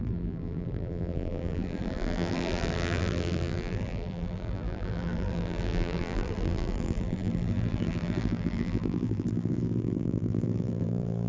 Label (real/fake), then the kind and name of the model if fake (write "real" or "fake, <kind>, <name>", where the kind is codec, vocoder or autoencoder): fake, vocoder, BigVGAN v2